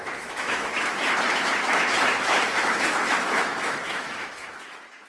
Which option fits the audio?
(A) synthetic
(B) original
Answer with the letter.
A